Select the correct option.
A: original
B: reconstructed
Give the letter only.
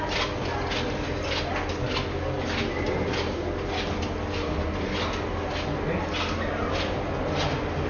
A